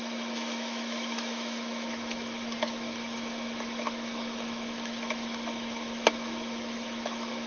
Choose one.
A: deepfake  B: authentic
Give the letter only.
A